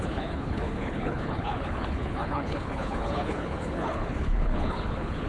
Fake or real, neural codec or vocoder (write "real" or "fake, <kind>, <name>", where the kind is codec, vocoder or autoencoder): fake, codec, HILCodec